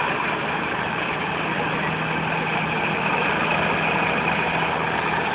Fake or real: real